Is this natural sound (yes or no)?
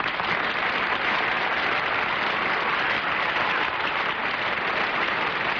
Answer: yes